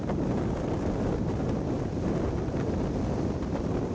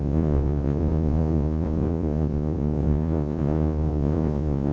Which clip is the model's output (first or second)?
second